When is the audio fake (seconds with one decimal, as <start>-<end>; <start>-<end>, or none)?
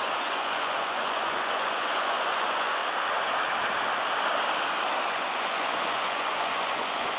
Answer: 0.0-2.8; 5.0-7.2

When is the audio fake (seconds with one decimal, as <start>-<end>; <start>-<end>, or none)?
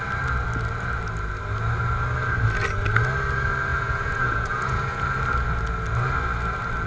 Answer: 3.7-5.0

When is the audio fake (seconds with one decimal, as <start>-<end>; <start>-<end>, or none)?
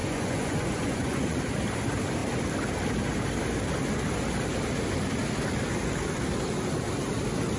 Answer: 0.0-1.4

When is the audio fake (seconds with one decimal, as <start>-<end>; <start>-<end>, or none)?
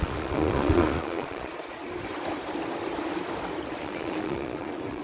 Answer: 0.0-1.8; 3.8-5.0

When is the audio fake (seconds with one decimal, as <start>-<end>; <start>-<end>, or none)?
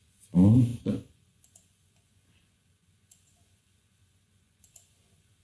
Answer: 0.0-5.4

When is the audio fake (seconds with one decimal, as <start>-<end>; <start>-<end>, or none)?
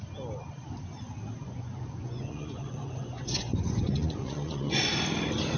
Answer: 1.4-4.8